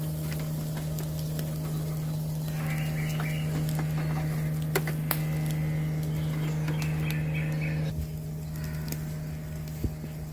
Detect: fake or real real